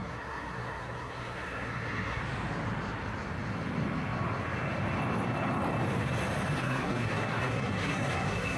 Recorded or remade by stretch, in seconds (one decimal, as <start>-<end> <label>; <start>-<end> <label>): 0.0-2.2 remade; 2.2-6.6 recorded; 6.6-8.6 remade